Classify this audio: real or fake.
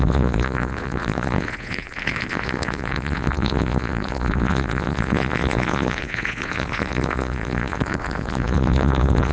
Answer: fake